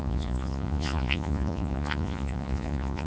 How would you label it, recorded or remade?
remade